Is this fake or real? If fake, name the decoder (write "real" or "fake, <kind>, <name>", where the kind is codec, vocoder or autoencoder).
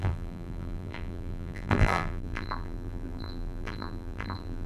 fake, vocoder, BigVGAN v2